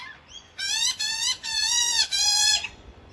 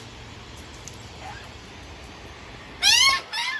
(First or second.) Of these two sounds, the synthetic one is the first